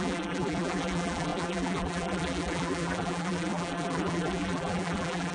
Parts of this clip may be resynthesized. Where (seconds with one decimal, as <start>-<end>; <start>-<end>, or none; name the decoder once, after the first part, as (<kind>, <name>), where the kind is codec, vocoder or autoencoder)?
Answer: 0.0-5.3 (vocoder, BigVGAN v2)